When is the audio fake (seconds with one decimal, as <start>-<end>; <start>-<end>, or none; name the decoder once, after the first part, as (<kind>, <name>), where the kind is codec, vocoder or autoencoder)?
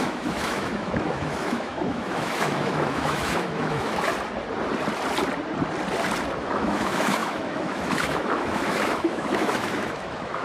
0.0-4.1 (autoencoder, DAC-VAE); 6.4-10.4